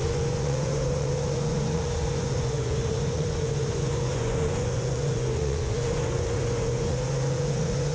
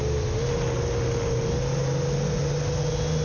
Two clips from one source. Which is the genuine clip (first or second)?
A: second